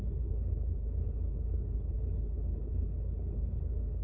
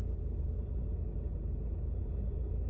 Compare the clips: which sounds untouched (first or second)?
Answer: second